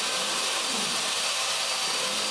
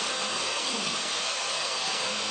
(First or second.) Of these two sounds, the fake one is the second